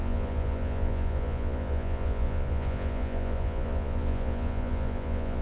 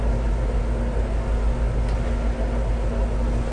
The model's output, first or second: first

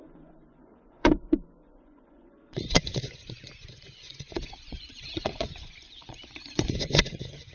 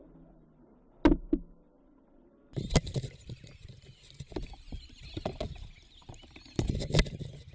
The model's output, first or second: first